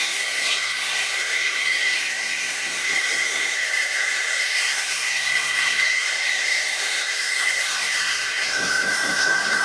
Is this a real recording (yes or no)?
no